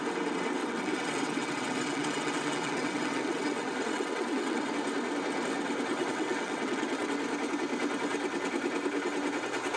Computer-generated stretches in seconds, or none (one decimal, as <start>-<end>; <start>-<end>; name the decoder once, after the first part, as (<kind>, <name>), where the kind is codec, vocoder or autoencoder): 0.6-4.7 (vocoder, WaveNeXt); 5.9-7.1